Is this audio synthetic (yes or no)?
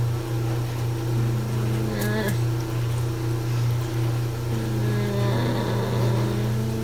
no